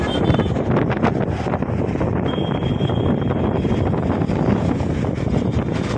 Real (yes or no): yes